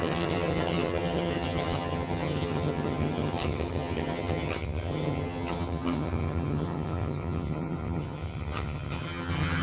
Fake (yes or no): yes